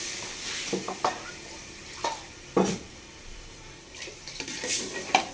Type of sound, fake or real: fake